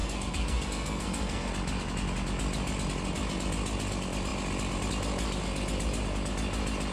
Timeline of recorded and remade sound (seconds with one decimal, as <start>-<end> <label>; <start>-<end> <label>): 0.0-1.5 remade; 1.5-6.9 recorded